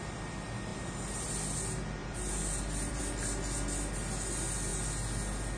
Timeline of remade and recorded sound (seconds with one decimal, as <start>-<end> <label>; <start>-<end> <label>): 0.0-0.7 recorded; 0.7-1.3 remade; 1.3-2.0 recorded; 2.0-3.0 remade; 3.0-5.6 recorded